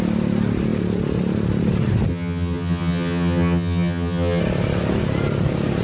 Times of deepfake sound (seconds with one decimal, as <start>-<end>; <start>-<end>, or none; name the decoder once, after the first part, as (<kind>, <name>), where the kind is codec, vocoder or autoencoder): 2.1-4.4 (vocoder, HiFi-GAN)

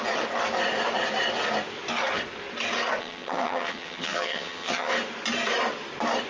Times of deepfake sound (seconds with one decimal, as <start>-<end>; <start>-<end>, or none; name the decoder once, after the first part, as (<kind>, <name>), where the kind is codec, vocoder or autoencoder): 3.0-4.9 (vocoder, HiFi-GAN)